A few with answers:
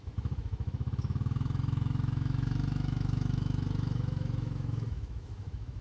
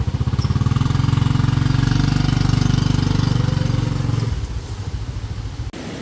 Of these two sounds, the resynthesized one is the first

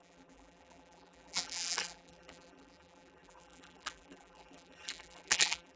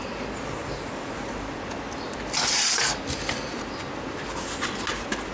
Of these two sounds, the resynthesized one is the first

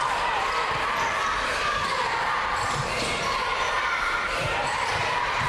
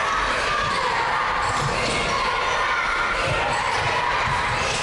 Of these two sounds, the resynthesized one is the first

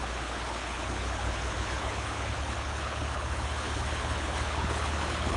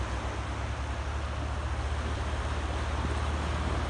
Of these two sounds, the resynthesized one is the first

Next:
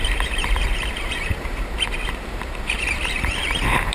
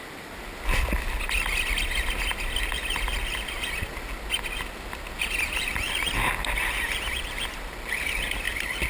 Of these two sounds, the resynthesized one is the first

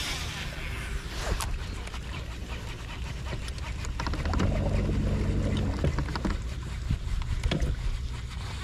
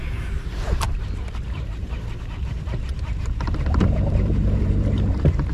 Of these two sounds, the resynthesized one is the second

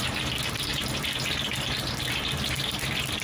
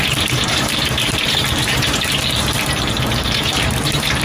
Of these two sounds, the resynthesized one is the second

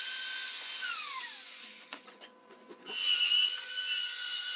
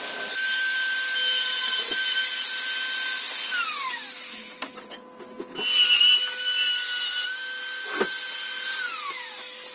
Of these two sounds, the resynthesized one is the first